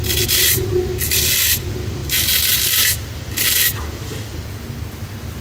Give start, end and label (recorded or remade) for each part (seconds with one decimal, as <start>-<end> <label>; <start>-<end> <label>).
0.0-5.4 recorded